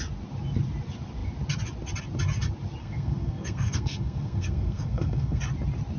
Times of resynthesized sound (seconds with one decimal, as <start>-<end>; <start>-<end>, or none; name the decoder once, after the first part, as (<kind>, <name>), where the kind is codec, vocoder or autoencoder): 2.8-5.4 (codec, SNAC)